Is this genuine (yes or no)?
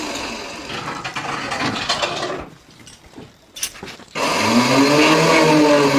yes